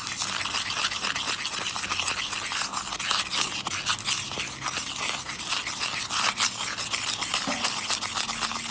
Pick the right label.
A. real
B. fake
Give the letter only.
A